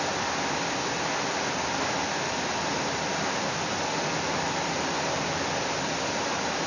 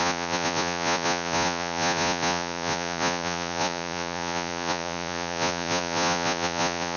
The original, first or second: first